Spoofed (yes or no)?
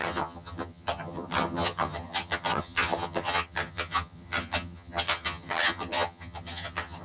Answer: yes